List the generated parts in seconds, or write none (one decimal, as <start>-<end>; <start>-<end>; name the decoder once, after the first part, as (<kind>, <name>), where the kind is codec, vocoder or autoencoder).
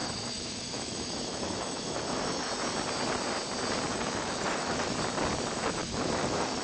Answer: 0.0-2.5 (autoencoder, DAC-VAE); 3.9-4.9; 5.8-6.6